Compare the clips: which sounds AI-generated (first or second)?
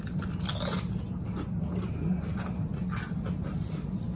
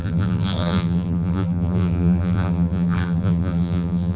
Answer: second